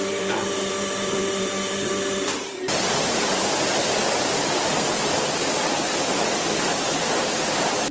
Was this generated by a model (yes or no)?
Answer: yes